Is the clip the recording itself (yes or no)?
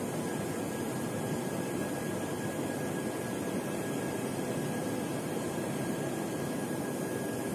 yes